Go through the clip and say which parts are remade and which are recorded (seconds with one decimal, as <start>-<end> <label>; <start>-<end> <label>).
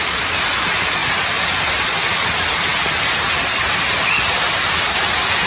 0.0-5.5 recorded